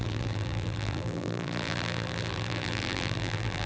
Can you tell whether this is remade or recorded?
remade